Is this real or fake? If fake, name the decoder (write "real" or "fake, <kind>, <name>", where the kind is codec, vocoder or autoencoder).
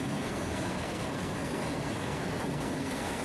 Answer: fake, codec, SNAC